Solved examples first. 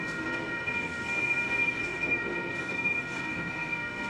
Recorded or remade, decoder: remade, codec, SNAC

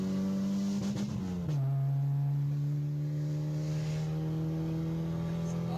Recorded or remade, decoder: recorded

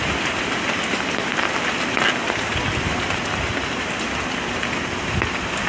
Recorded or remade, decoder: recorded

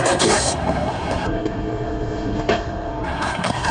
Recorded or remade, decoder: remade, codec, SNAC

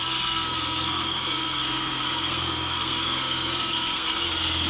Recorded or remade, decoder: remade, codec, SNAC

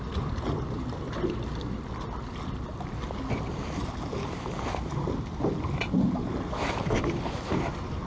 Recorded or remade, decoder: recorded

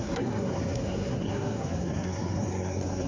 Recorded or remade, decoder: remade, codec, SNAC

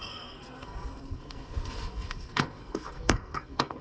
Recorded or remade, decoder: remade, codec, SNAC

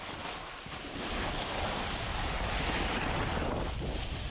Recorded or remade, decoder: recorded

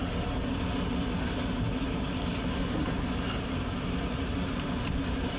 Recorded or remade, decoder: recorded